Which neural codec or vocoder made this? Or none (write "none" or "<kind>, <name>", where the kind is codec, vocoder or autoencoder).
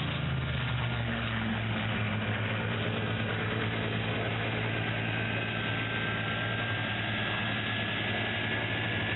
none